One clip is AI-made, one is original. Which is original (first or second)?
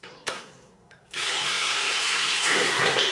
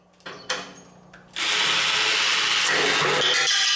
second